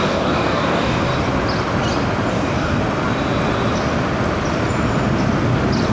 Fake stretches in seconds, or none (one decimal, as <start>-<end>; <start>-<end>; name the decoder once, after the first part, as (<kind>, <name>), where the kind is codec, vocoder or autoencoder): 0.0-1.1 (codec, DAC); 2.3-2.8